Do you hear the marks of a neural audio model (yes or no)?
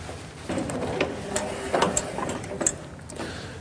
no